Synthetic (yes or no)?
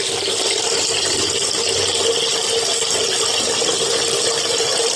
no